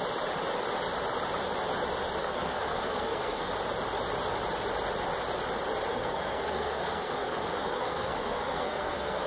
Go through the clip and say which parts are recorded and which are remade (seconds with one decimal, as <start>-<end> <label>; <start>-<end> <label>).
0.0-2.2 recorded; 2.2-3.5 remade; 3.5-5.9 recorded; 5.9-9.3 remade